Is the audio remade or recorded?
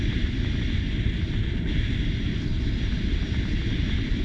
recorded